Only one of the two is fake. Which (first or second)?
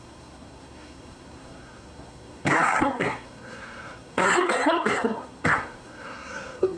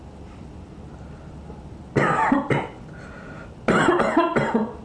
first